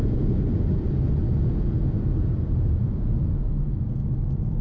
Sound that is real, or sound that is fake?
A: fake